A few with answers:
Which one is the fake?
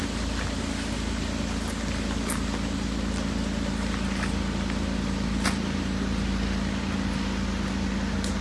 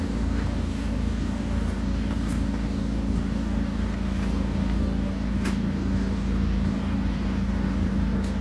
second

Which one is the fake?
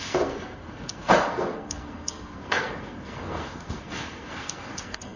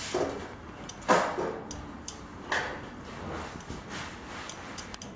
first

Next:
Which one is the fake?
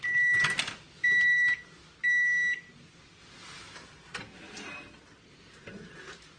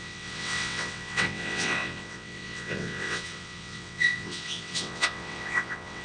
second